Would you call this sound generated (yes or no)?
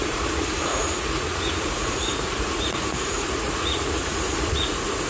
yes